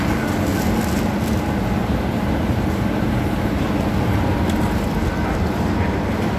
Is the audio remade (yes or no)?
no